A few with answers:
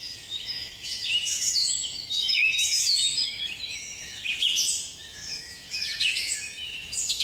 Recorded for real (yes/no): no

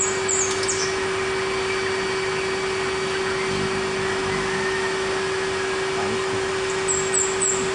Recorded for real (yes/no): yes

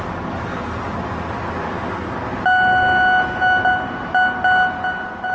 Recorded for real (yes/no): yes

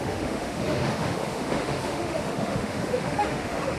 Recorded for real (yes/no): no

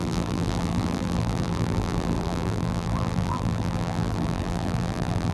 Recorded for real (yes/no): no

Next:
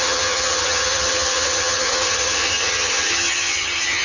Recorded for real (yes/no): no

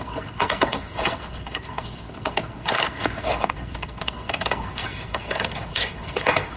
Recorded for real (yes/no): no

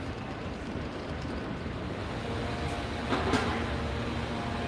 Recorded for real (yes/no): yes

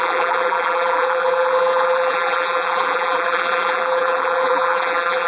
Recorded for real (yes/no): no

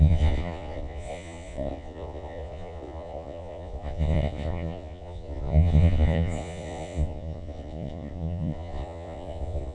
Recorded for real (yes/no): no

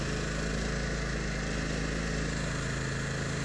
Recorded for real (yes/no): yes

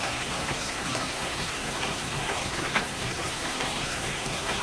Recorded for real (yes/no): no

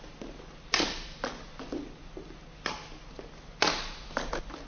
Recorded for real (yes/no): yes